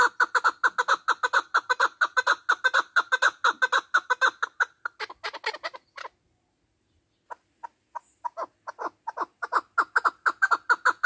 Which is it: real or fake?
real